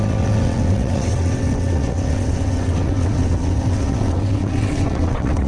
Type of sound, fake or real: fake